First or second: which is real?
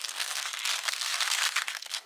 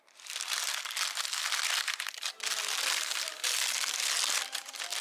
second